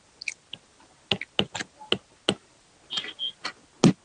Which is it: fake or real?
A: real